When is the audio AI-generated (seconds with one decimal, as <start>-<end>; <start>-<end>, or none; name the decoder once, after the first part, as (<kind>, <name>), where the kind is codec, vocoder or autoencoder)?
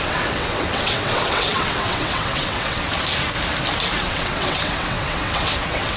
0.0-2.9 (vocoder, WaveNeXt); 4.0-6.0